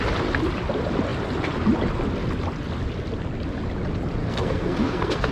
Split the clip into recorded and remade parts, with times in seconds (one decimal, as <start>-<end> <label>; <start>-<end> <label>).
0.0-4.2 recorded; 4.2-5.3 remade